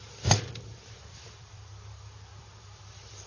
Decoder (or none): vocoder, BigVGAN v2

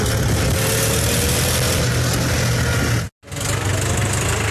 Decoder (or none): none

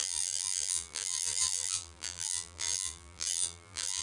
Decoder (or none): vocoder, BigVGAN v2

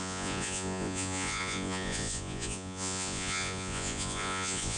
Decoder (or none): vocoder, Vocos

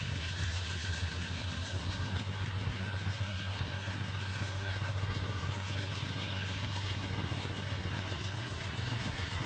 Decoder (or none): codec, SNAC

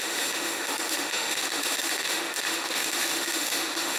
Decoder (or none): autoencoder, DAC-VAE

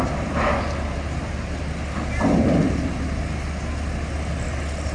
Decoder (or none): none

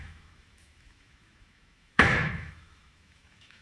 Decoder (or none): autoencoder, DAC-VAE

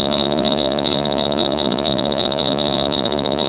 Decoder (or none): vocoder, Vocos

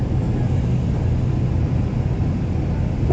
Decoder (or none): none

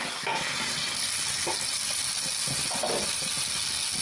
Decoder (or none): none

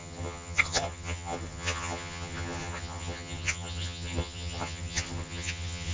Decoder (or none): vocoder, HiFi-GAN